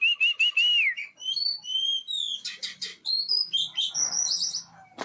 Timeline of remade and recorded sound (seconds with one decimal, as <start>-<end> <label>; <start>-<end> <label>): 0.0-5.0 recorded